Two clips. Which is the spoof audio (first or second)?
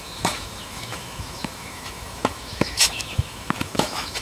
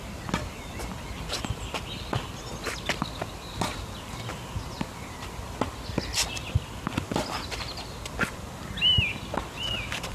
first